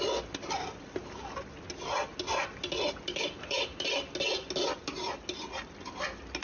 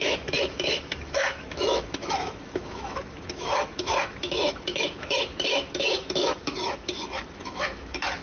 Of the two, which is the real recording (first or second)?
first